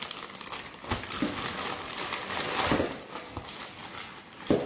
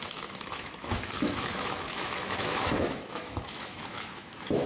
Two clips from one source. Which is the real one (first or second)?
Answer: first